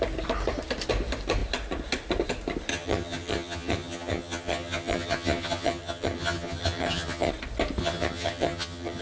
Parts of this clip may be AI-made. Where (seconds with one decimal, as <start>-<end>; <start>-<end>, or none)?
2.7-7.3; 7.8-9.0